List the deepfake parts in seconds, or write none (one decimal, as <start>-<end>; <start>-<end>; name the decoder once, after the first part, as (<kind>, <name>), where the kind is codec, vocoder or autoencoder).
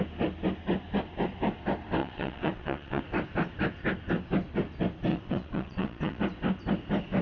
2.0-3.0 (vocoder, WaveNeXt); 5.1-6.2